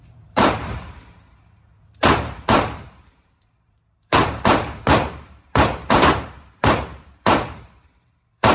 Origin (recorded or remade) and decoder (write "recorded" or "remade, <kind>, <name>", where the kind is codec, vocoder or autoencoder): remade, vocoder, BigVGAN v2